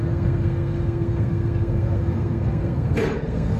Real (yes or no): no